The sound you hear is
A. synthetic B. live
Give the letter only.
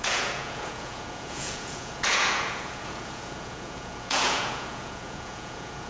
A